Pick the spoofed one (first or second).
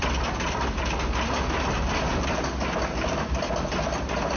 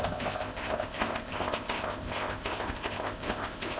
second